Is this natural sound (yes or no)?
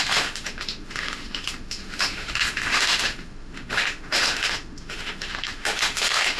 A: no